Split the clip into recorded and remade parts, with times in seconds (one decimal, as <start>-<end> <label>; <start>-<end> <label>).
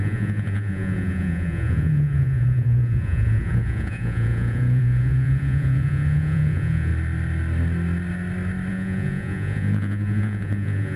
0.0-6.9 remade; 6.9-8.7 recorded; 8.7-11.0 remade